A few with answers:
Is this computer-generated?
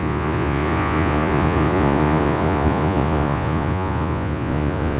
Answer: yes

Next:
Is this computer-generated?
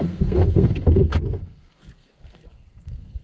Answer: yes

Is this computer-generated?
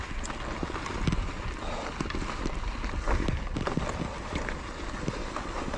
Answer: no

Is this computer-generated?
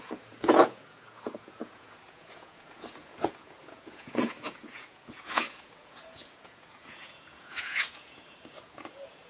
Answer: yes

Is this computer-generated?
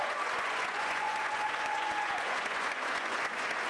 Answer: yes